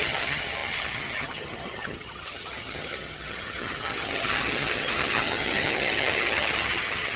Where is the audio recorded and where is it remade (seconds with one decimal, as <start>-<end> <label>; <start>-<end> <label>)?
0.0-7.2 remade